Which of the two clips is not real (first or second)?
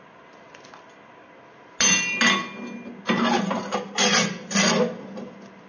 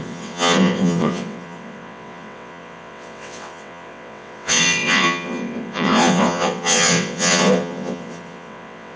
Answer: second